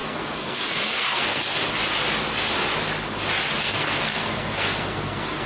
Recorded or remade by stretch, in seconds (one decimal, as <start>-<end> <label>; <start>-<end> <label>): 0.0-1.6 remade; 1.6-3.6 recorded; 3.6-5.5 remade